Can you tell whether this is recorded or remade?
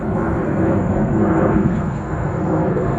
remade